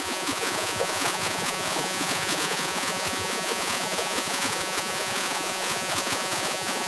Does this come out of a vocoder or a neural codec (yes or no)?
yes